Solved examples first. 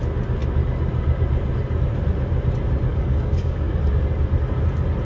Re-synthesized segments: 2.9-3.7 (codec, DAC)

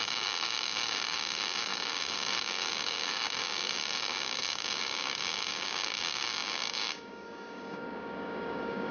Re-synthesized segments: 0.0-8.9 (codec, DAC)

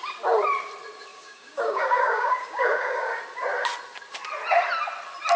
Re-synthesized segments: 1.1-3.2 (codec, DAC)